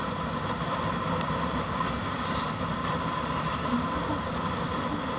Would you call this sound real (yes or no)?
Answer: yes